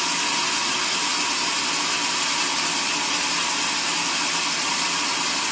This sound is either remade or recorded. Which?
recorded